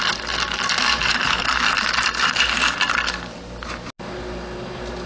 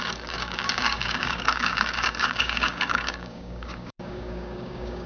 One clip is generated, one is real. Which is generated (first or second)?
second